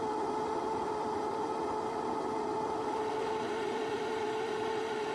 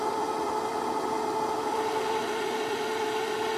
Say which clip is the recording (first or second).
second